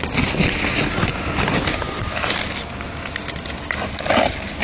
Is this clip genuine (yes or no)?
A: yes